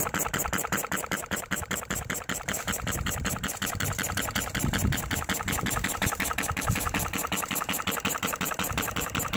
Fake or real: fake